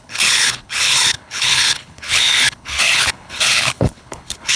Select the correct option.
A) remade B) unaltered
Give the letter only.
A